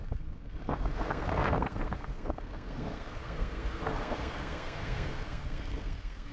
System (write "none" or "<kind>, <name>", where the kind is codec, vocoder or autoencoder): codec, SNAC